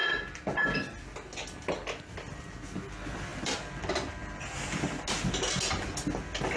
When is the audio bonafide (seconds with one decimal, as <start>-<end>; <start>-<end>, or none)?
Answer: 0.0-6.6

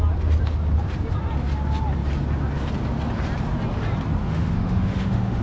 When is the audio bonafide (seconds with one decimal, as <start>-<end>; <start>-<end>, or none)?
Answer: 0.0-4.2

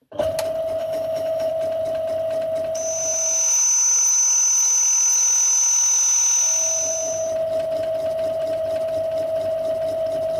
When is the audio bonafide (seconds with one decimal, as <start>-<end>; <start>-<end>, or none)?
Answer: 0.0-0.8; 1.5-10.4

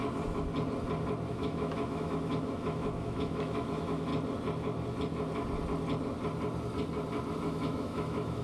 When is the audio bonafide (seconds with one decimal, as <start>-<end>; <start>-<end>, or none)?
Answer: 0.0-1.3; 4.1-7.4

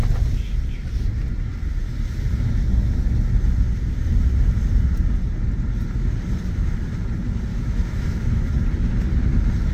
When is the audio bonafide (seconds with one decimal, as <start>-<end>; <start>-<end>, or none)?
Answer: 0.0-7.5; 8.4-9.7